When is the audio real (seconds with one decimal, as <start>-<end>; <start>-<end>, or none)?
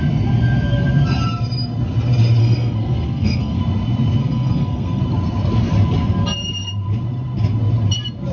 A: 0.0-2.4; 3.6-4.2; 5.0-8.3